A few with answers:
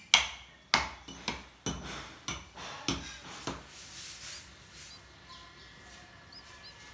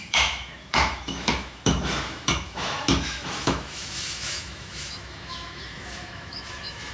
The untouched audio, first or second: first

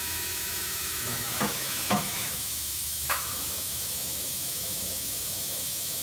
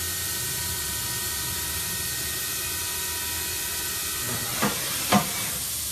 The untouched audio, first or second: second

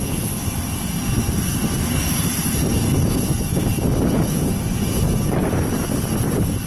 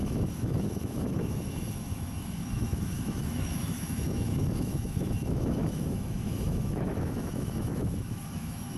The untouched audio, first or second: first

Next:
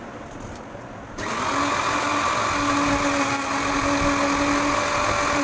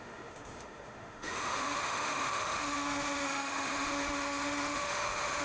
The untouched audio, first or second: first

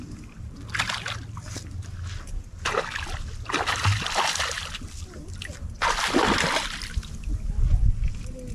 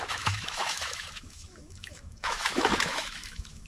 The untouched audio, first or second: first